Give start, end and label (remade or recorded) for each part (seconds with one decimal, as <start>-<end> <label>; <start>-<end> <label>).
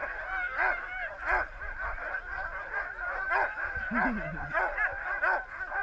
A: 0.0-5.8 recorded